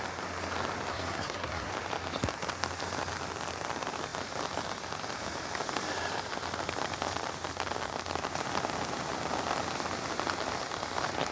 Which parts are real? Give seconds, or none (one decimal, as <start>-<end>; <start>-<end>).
0.0-0.9; 1.7-11.3